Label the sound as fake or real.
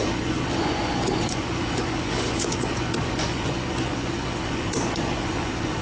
fake